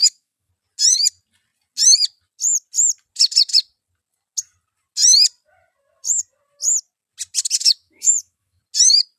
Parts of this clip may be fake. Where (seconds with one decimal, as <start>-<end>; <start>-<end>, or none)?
0.0-0.5; 7.6-8.6